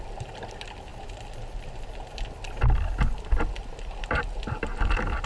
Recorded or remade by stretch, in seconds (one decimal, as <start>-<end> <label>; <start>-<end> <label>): 0.0-5.3 recorded